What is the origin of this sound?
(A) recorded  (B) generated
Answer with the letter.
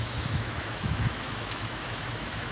B